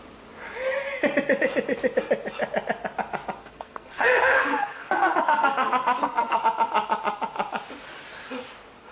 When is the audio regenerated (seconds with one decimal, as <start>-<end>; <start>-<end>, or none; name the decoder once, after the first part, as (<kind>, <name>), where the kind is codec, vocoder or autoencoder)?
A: 3.4-6.4 (codec, SNAC)

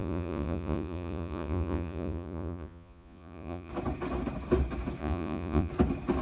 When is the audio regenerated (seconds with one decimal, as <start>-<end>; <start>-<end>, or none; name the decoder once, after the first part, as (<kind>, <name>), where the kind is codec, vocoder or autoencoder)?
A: 0.0-3.7 (vocoder, Vocos); 5.0-5.7

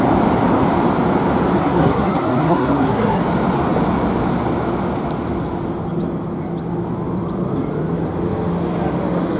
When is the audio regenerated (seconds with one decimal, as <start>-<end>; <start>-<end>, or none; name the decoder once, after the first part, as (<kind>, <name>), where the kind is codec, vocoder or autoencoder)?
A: 1.6-3.2 (codec, SNAC)

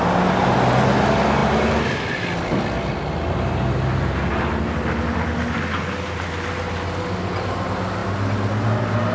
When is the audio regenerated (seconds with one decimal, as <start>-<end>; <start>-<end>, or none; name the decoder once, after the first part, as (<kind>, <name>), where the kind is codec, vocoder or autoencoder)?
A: none

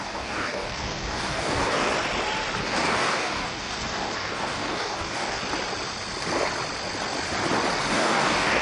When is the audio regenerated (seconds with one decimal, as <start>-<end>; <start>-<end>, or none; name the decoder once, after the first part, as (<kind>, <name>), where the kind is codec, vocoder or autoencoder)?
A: 0.0-1.9 (codec, DAC); 2.6-5.4; 7.9-8.6

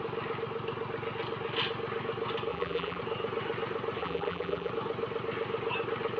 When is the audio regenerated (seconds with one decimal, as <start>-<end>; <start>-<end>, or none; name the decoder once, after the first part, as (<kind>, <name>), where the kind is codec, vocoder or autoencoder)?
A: 2.5-3.0 (vocoder, BigVGAN v2); 4.0-4.7